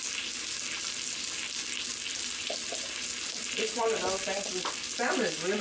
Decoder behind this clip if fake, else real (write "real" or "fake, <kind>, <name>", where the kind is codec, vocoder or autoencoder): real